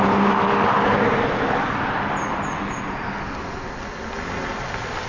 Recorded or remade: recorded